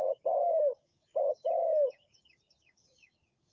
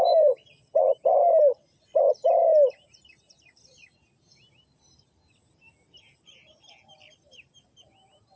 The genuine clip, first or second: second